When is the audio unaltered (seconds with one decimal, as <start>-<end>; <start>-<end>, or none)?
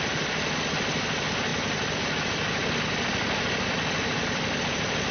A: 0.0-5.1